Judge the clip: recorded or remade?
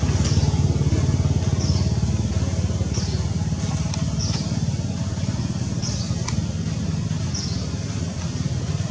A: recorded